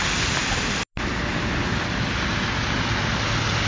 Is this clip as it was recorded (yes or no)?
yes